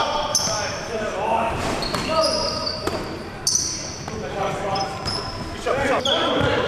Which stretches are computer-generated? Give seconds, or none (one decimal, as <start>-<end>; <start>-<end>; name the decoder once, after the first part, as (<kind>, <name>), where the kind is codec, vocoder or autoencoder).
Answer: 0.0-3.4 (vocoder, BigVGAN v2); 4.2-6.3